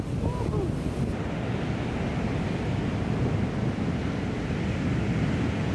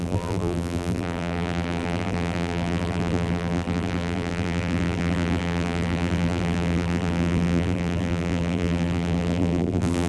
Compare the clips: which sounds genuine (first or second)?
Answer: first